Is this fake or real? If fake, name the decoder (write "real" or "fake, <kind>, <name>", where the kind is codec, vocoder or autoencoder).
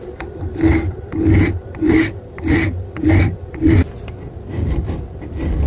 real